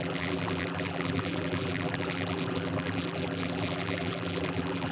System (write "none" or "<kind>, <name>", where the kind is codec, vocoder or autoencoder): vocoder, BigVGAN v2